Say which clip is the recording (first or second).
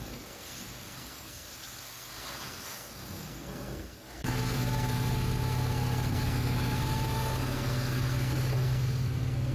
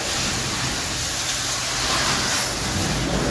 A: second